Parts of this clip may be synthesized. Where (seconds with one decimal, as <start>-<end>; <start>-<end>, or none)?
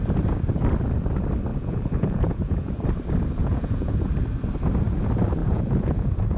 1.5-2.7; 3.4-4.1; 5.4-6.4